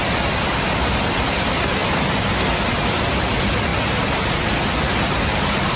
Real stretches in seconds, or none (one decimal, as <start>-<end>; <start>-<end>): 0.0-0.5; 3.7-4.3

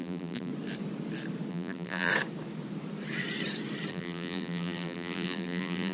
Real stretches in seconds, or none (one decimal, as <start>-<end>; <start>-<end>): 0.5-1.5; 2.1-3.9

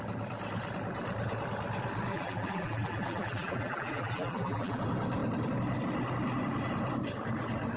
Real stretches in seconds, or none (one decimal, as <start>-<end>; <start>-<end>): 0.0-2.1; 4.8-7.8